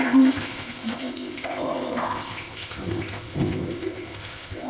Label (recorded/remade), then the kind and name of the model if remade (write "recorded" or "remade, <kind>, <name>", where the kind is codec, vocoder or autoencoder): remade, codec, ZipCodec